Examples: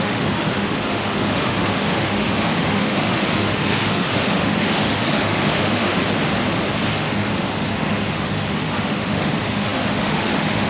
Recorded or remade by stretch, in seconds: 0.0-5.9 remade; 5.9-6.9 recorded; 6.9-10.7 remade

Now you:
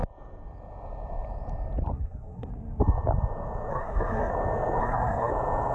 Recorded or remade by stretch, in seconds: 0.0-1.9 recorded; 1.9-2.5 remade; 2.5-3.7 recorded; 3.7-4.3 remade; 4.3-4.8 recorded; 4.8-5.3 remade; 5.3-5.7 recorded

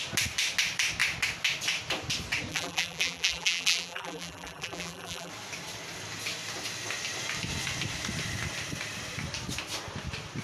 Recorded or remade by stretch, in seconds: 0.0-2.5 recorded; 2.5-5.3 remade; 5.3-10.4 recorded

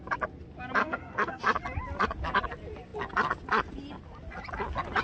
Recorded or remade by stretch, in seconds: 0.0-0.8 recorded; 0.8-1.4 remade; 1.4-5.0 recorded

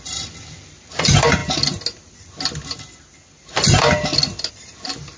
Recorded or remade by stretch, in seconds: 0.0-1.4 remade; 1.4-4.5 recorded; 4.5-5.2 remade